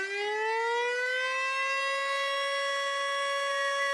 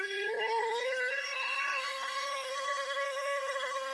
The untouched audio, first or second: first